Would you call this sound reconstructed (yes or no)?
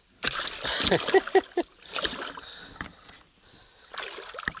no